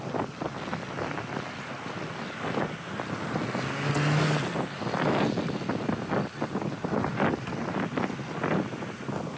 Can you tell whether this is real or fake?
real